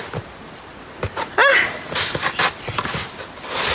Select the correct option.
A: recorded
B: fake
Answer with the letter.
A